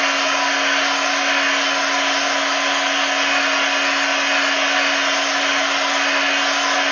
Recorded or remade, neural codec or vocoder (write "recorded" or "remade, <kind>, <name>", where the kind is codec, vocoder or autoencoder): recorded